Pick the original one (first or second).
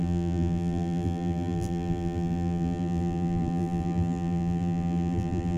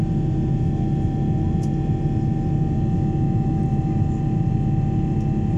second